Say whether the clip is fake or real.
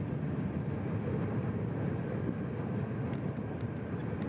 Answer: real